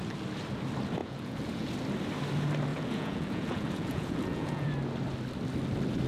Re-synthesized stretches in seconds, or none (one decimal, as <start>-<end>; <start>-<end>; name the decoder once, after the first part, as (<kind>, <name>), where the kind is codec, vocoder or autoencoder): 1.0-1.7 (vocoder, Vocos); 2.7-4.7